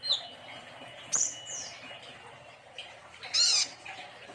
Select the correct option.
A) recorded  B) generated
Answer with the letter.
A